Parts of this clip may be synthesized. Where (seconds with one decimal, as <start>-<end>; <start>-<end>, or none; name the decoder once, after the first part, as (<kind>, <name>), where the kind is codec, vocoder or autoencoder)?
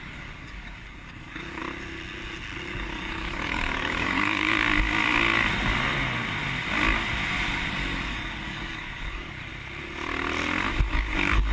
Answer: 0.0-1.6 (codec, DAC); 2.7-4.5; 7.7-9.5; 10.9-11.5